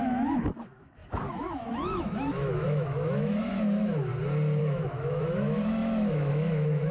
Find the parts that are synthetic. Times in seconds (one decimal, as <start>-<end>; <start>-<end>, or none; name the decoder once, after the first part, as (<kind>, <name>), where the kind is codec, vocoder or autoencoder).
0.0-4.1 (autoencoder, DAC-VAE); 4.6-6.9